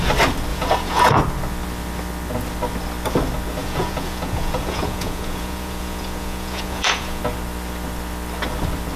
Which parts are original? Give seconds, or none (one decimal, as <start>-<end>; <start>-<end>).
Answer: 0.0-0.5; 1.2-3.6; 7.2-9.0